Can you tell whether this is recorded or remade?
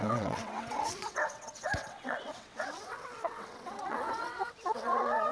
remade